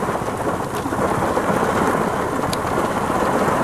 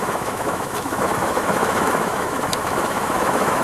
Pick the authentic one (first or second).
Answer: first